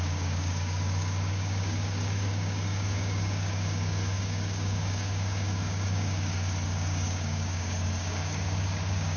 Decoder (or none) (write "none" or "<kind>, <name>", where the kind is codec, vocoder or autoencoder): codec, DAC